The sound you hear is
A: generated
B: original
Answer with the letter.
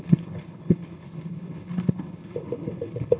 A